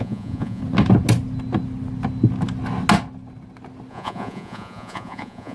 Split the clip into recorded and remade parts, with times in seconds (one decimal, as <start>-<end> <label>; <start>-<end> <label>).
0.0-0.6 remade; 0.6-3.9 recorded; 3.9-5.5 remade